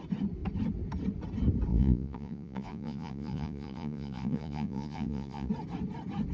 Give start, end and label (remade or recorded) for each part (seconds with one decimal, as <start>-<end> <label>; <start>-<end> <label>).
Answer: 0.0-1.7 recorded; 1.7-5.5 remade; 5.5-6.3 recorded